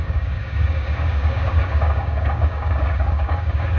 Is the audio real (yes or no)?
no